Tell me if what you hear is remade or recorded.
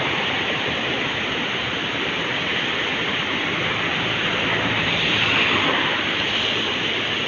recorded